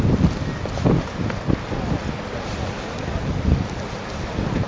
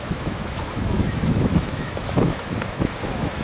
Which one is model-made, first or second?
second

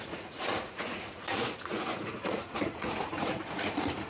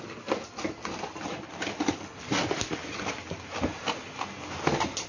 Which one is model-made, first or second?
first